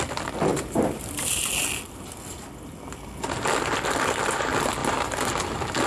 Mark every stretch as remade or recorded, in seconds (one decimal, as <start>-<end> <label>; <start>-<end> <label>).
0.0-0.5 recorded; 0.5-1.5 remade; 1.5-4.8 recorded; 4.8-5.3 remade; 5.3-5.9 recorded